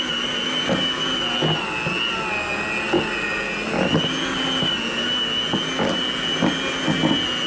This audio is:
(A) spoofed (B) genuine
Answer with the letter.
B